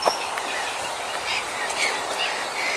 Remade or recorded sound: recorded